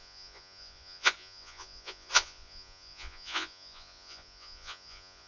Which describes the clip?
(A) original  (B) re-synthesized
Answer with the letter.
B